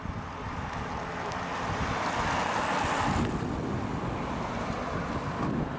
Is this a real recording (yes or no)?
yes